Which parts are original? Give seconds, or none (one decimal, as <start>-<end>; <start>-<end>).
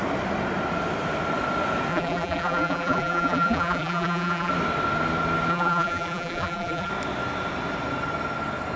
0.0-1.9; 4.5-5.5; 6.9-8.8